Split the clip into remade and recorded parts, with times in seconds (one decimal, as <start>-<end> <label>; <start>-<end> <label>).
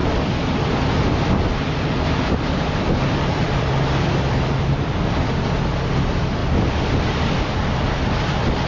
0.0-5.0 remade; 5.0-8.7 recorded